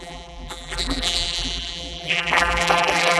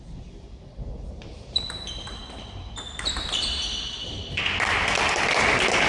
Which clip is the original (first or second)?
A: second